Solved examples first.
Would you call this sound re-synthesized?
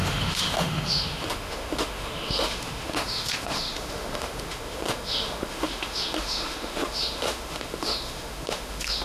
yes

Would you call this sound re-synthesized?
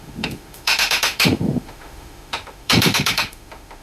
yes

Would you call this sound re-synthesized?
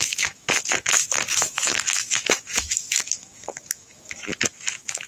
yes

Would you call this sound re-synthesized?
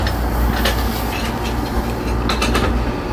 no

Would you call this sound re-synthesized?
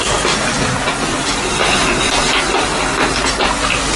no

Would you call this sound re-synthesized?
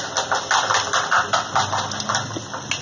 no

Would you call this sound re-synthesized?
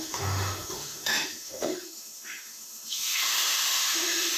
yes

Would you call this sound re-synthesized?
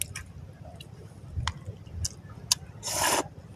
no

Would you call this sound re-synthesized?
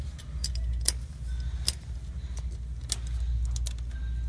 no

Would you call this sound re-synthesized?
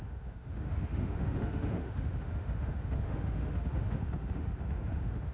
yes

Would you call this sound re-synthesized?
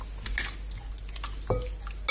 no